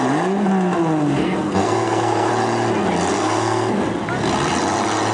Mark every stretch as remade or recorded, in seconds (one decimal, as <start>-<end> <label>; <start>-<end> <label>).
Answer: 0.0-1.2 recorded; 1.2-2.3 remade; 2.3-3.1 recorded; 3.1-3.8 remade; 3.8-5.1 recorded